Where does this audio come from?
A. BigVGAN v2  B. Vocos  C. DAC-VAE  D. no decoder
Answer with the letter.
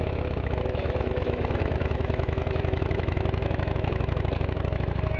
C